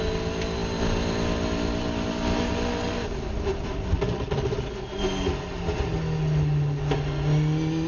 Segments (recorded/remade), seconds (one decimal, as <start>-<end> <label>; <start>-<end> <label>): 0.0-7.9 recorded

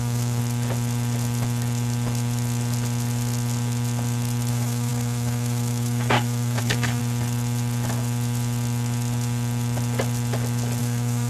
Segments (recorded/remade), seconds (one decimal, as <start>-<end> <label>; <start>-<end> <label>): 0.0-0.4 remade; 0.4-4.5 recorded; 4.5-7.0 remade; 7.0-10.8 recorded; 10.8-11.3 remade

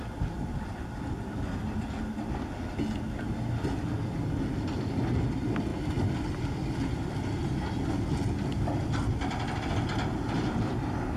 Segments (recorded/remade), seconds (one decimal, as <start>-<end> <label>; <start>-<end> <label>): 0.0-11.2 recorded

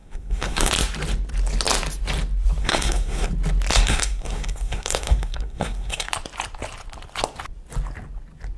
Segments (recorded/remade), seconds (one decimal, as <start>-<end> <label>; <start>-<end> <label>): 0.0-0.7 remade; 0.7-2.6 recorded; 2.6-3.3 remade; 3.3-3.7 recorded; 3.7-6.1 remade; 6.1-8.6 recorded

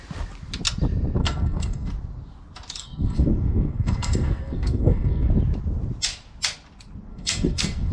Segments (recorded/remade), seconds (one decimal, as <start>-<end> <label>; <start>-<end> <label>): 0.0-1.2 recorded; 1.2-1.9 remade; 1.9-2.8 recorded; 2.8-5.3 remade; 5.3-7.1 recorded; 7.1-7.9 remade